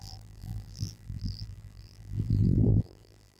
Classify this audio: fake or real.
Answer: fake